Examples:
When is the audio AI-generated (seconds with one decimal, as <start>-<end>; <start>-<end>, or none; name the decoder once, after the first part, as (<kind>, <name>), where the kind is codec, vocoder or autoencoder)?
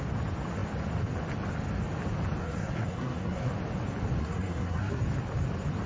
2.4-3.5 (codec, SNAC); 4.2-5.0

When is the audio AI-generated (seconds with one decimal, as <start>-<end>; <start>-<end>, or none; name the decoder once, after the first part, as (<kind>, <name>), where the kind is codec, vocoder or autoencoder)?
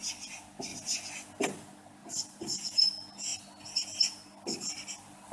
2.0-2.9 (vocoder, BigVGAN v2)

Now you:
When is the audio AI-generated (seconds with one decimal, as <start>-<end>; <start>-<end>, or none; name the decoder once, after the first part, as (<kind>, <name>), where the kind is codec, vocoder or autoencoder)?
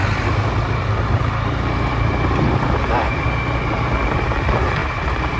0.0-3.2 (vocoder, BigVGAN v2); 4.8-5.4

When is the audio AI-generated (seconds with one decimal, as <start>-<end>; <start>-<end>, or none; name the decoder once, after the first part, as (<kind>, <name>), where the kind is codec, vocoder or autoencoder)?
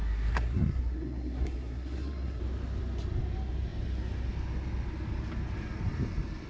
0.0-2.4 (codec, SNAC)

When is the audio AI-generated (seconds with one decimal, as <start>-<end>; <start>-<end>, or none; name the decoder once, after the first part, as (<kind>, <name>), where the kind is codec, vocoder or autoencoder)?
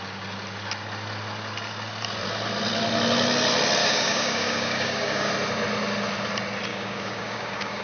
3.8-5.3 (codec, DAC); 6.7-7.8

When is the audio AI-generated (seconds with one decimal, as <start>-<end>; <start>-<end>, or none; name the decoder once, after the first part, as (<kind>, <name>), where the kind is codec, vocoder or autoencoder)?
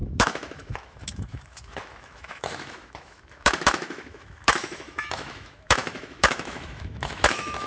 0.0-7.7 (autoencoder, DAC-VAE)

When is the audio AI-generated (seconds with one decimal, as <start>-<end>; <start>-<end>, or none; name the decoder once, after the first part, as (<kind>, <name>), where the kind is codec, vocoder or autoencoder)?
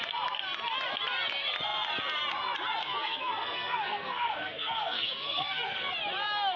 2.8-5.9 (codec, SNAC)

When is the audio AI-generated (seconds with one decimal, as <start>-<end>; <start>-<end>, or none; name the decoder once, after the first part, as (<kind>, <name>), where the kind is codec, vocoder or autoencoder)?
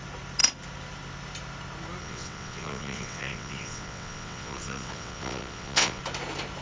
2.0-6.0 (vocoder, WaveNeXt)